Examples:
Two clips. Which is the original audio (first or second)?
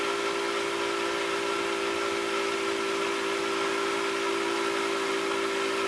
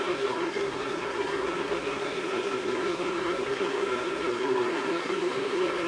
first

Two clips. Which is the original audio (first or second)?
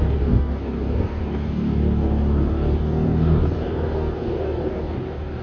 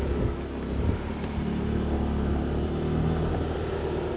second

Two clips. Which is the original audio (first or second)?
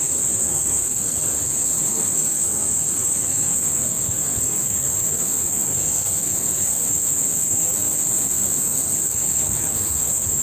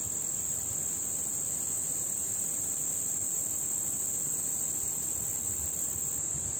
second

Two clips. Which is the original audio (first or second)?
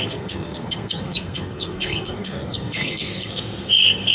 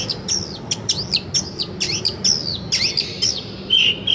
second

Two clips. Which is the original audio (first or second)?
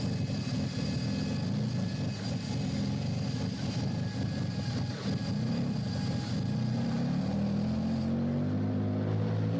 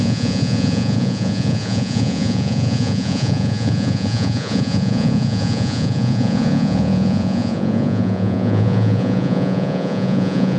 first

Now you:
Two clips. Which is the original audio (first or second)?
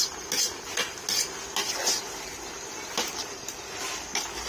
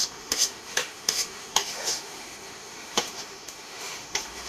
first